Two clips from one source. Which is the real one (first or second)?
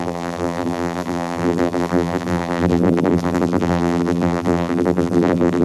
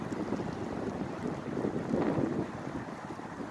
second